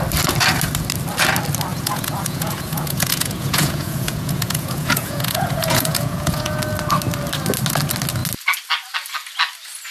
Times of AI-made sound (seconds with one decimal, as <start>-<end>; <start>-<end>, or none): 1.7-6.6